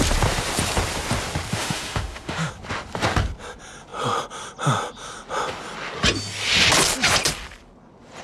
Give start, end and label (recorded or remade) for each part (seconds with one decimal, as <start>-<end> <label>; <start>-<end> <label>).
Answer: 0.0-1.5 recorded; 1.5-2.5 remade; 2.5-8.2 recorded